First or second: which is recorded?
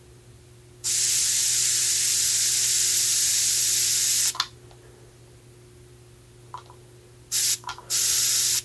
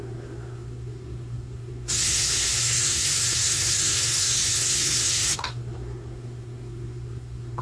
first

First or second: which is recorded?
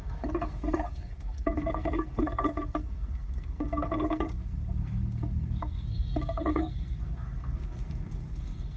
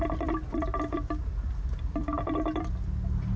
second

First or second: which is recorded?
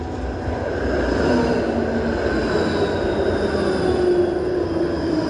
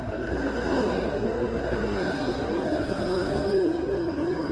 first